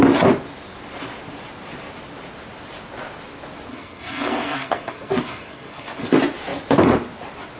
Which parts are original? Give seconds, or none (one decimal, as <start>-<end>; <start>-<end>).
0.0-3.7; 6.1-7.6